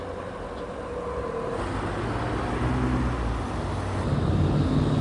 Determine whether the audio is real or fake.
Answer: real